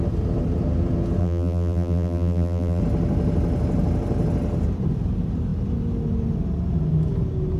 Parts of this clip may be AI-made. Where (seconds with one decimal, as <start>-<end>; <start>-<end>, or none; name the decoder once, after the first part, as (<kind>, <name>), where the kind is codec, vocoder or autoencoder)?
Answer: 1.2-2.8 (vocoder, BigVGAN v2)